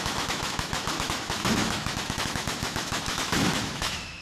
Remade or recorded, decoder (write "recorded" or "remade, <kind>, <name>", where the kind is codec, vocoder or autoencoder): remade, autoencoder, DAC-VAE